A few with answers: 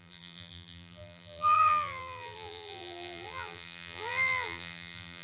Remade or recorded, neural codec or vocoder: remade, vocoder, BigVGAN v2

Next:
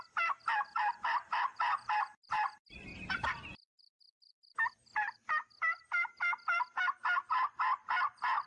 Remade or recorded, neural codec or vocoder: remade, vocoder, BigVGAN v2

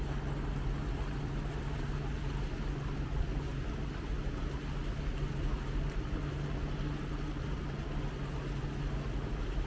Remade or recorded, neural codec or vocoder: recorded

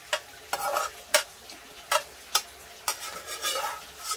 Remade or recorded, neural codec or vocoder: recorded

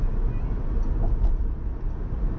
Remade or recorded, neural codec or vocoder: recorded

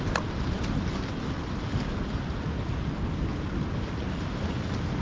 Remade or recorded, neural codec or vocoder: recorded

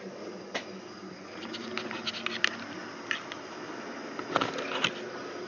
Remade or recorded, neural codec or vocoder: recorded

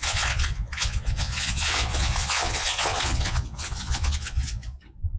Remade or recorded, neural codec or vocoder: remade, vocoder, Vocos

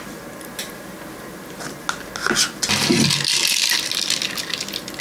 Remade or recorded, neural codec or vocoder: recorded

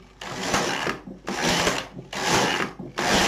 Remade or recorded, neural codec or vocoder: recorded